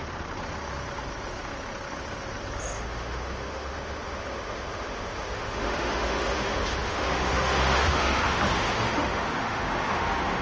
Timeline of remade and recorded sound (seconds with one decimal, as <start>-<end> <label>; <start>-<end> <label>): 0.0-2.6 recorded; 2.6-10.4 remade

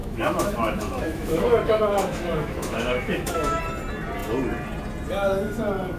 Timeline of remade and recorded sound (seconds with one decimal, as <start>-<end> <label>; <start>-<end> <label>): 0.0-3.6 remade; 3.6-6.0 recorded

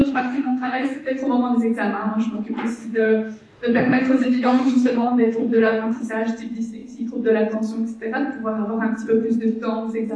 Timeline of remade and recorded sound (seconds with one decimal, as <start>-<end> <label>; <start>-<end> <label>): 0.0-1.2 remade; 1.2-2.8 recorded; 2.8-6.1 remade; 6.1-10.2 recorded

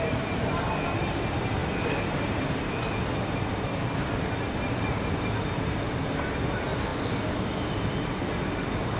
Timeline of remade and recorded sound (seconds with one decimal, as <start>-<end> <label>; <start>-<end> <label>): 0.0-9.0 recorded

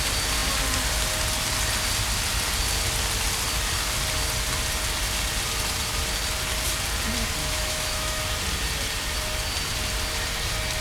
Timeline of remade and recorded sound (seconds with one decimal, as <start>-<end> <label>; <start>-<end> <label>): 0.0-7.4 recorded; 7.4-8.2 remade; 8.2-10.8 recorded

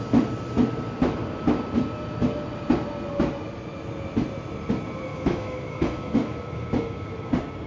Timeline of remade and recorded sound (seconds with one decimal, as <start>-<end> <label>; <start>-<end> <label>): 0.0-5.1 recorded; 5.1-7.3 remade; 7.3-7.7 recorded

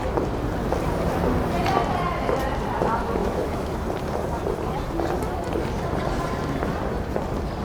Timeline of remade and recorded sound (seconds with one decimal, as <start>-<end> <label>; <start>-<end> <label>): 0.0-3.2 recorded; 3.2-3.7 remade; 3.7-7.6 recorded